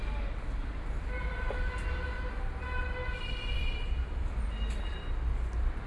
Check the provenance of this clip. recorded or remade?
recorded